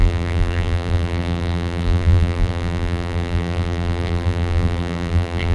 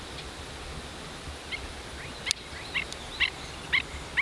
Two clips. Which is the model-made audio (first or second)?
first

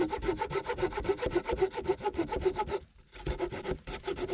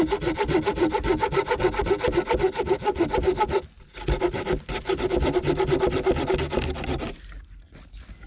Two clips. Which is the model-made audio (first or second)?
first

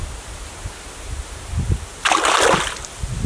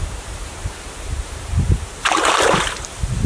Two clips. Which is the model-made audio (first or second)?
second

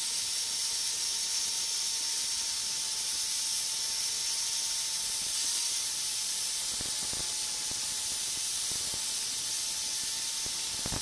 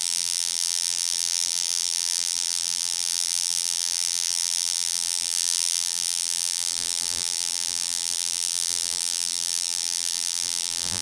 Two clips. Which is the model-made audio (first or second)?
second